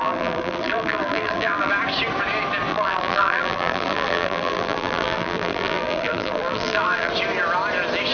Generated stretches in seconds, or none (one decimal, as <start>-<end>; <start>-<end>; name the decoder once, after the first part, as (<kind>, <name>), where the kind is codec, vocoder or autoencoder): 0.0-1.7 (vocoder, BigVGAN v2); 2.7-7.1